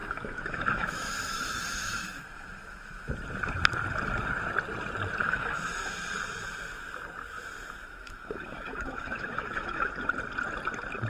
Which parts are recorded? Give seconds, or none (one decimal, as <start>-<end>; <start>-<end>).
3.1-5.2; 6.2-7.8; 9.9-11.1